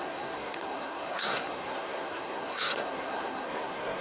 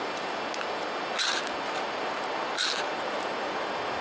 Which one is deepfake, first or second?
first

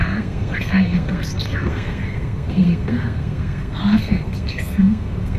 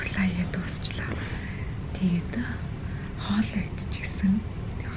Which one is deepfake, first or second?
first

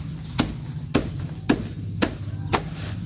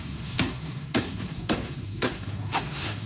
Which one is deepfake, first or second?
second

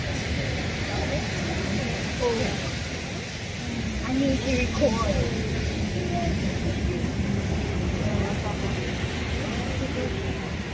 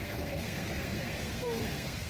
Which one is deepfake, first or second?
second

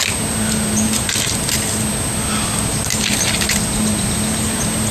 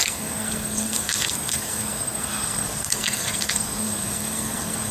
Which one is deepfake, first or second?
second